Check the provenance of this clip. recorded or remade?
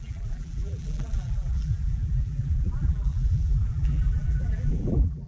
remade